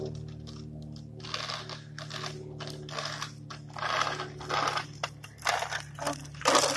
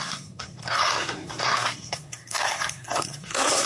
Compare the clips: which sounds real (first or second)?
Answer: first